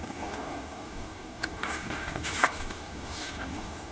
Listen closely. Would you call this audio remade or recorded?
remade